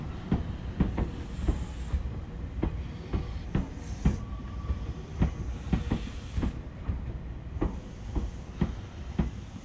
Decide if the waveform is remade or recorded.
remade